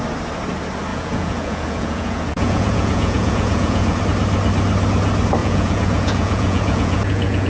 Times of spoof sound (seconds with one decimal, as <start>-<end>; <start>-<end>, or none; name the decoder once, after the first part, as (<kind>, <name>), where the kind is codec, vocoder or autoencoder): 0.9-4.0 (vocoder, Vocos); 5.4-7.5